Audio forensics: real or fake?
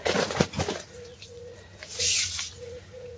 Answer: fake